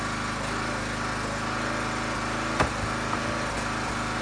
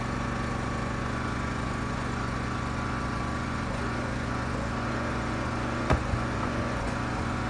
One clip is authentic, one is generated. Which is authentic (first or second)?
first